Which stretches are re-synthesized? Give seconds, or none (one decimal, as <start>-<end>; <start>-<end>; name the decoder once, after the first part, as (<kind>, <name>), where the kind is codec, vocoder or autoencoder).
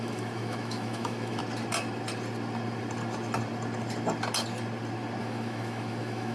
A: 0.0-1.4 (autoencoder, DAC-VAE); 5.2-6.3